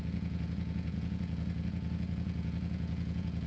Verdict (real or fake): fake